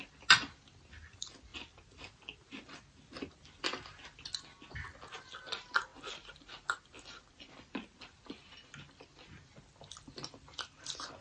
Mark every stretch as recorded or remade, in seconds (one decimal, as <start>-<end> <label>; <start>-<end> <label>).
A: 0.0-11.2 recorded

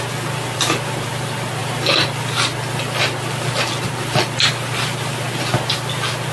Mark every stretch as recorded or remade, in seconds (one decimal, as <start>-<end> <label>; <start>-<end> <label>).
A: 0.0-6.3 recorded

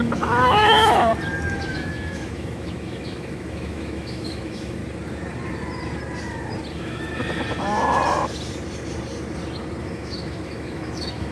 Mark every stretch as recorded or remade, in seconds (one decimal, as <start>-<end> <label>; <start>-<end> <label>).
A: 0.0-1.1 remade; 1.1-1.7 recorded; 1.7-4.8 remade; 4.8-6.7 recorded; 6.7-7.2 remade; 7.2-9.8 recorded; 9.8-11.3 remade

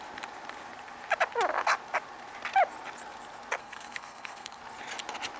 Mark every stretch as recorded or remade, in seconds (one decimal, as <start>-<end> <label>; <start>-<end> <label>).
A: 0.0-3.6 recorded; 3.6-4.6 remade; 4.6-5.4 recorded

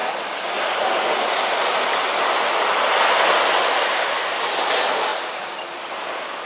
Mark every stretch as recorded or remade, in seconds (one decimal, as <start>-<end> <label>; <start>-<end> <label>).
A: 0.0-6.5 recorded

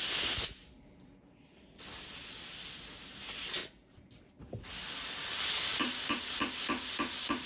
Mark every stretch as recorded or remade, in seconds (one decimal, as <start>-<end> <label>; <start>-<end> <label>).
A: 0.0-7.5 recorded

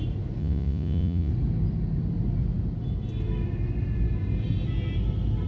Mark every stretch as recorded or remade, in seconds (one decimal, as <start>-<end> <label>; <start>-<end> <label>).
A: 0.0-0.4 recorded; 0.4-1.3 remade; 1.3-5.5 recorded

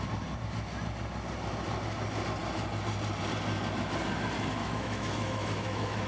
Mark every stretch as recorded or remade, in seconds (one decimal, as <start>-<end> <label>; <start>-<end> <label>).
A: 0.0-4.6 recorded; 4.6-6.1 remade